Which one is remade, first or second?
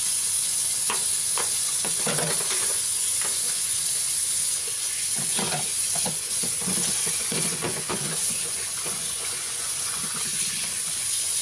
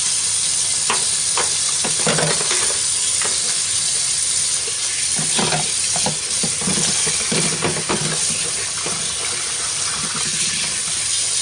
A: first